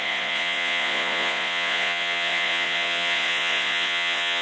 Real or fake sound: fake